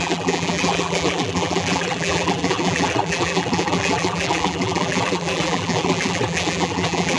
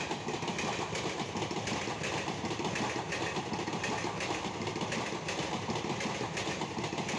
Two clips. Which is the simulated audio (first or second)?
first